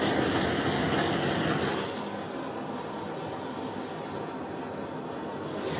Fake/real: real